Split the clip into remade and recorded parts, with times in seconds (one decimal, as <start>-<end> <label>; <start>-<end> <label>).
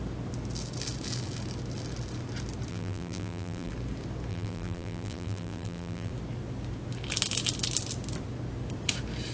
0.0-2.7 recorded; 2.7-3.7 remade; 3.7-4.3 recorded; 4.3-6.1 remade; 6.1-9.3 recorded